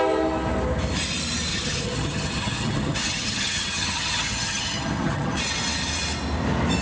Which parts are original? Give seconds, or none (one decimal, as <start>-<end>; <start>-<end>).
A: 0.0-1.5; 5.4-6.8